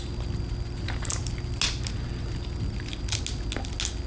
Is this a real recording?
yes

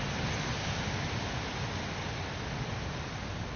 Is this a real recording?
yes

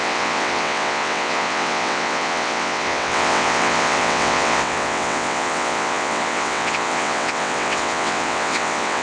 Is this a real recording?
no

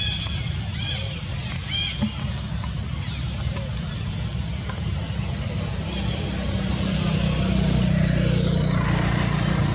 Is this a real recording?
yes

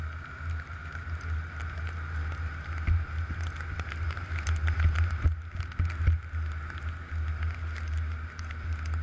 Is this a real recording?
yes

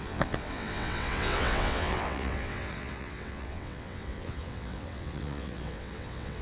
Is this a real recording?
no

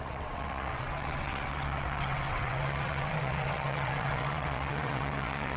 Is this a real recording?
no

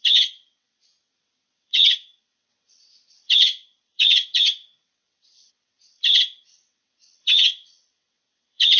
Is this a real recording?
no